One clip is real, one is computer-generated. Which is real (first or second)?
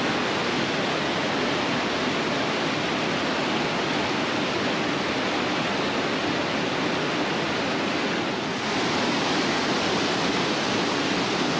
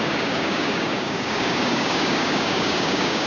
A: first